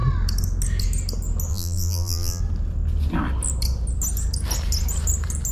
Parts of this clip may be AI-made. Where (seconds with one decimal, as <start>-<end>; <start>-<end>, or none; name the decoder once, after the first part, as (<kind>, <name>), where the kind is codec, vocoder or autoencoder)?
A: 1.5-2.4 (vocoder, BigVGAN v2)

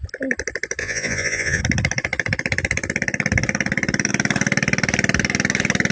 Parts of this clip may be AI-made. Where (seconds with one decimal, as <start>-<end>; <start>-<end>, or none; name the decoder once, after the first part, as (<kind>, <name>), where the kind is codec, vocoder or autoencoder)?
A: 0.8-1.6 (vocoder, Vocos)

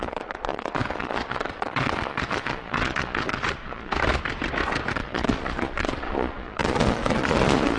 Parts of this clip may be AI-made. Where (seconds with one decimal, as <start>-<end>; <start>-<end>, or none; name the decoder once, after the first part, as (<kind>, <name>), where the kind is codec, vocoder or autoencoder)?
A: 0.0-3.9 (vocoder, Vocos); 4.9-7.8

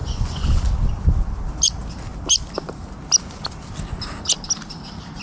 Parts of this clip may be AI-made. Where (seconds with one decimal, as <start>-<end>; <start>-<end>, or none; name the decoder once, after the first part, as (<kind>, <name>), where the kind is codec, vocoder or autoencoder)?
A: 0.0-0.7 (vocoder, Vocos)

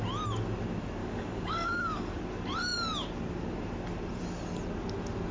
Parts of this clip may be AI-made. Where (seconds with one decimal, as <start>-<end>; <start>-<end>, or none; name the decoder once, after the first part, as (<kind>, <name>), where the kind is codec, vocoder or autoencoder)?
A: 1.0-2.2 (codec, DAC)